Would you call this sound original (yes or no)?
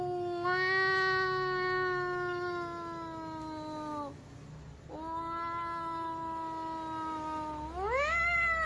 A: yes